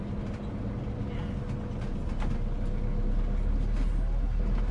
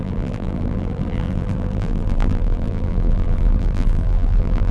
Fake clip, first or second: second